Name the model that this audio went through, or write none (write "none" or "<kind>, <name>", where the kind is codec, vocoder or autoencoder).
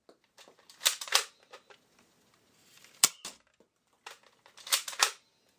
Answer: none